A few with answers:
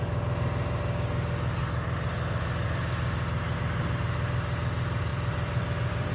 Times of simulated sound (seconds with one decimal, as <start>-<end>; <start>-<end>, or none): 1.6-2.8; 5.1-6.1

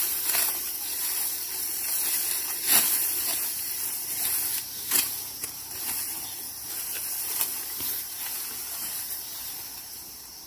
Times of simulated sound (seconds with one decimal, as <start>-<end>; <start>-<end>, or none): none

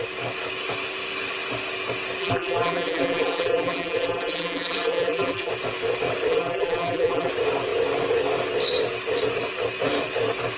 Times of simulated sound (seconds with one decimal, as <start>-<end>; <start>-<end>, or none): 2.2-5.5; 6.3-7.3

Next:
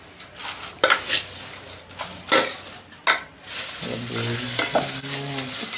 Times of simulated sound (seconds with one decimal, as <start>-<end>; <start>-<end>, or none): none

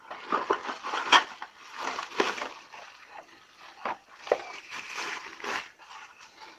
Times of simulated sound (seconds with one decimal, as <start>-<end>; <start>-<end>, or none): 0.0-0.6; 4.6-5.3; 5.8-6.6